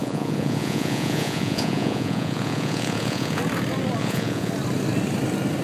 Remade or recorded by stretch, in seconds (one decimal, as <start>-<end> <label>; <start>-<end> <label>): 0.0-3.4 remade; 3.4-4.0 recorded; 4.0-4.5 remade; 4.5-5.6 recorded